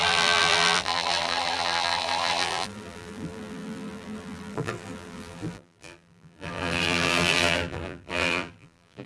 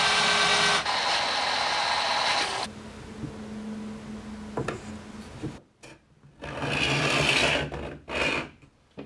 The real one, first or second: second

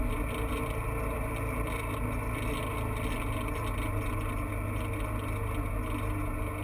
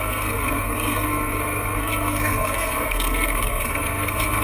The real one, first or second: first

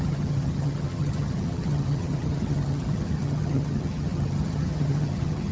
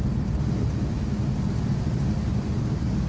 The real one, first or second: second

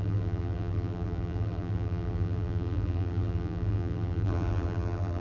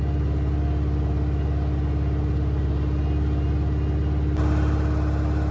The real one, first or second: second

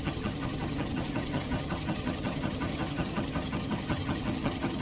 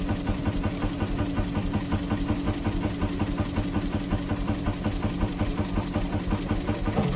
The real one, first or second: second